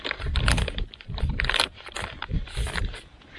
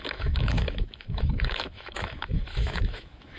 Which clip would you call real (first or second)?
first